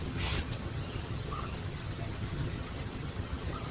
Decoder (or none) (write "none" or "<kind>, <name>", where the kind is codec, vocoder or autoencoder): vocoder, HiFi-GAN